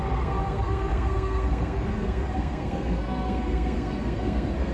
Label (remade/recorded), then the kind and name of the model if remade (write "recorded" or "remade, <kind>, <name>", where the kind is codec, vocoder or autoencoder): remade, codec, SNAC